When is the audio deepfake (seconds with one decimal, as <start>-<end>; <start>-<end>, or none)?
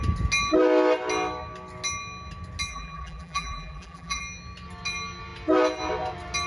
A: 2.7-4.2